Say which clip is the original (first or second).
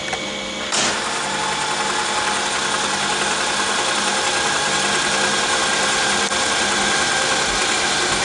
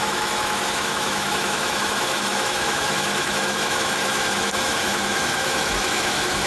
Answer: first